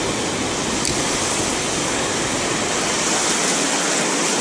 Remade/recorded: recorded